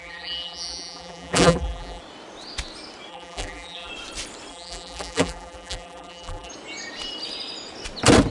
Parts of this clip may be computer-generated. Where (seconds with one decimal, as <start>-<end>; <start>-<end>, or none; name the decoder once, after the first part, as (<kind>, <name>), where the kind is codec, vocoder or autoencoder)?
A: 0.0-2.0 (vocoder, BigVGAN v2); 3.1-3.9; 4.5-6.5